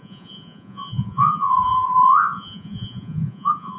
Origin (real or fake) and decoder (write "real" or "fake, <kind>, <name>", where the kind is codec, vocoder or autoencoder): fake, vocoder, Vocos